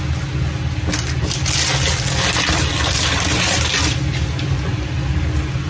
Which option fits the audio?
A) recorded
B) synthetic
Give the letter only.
A